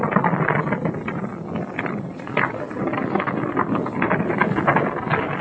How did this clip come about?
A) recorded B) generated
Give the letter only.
A